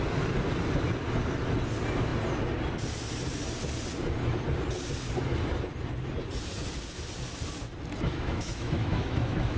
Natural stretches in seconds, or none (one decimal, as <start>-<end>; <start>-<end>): 0.0-8.1